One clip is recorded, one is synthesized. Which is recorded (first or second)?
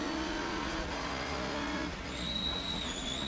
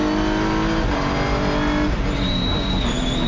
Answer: second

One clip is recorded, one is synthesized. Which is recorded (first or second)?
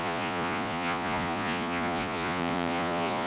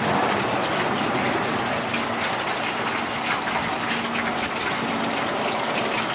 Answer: second